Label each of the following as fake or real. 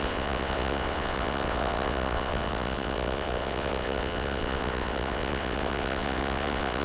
fake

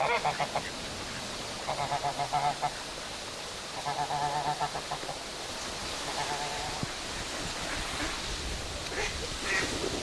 real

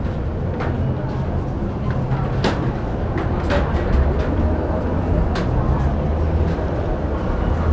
real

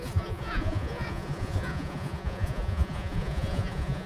fake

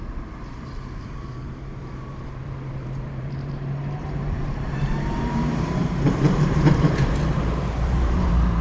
fake